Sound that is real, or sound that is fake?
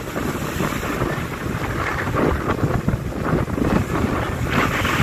fake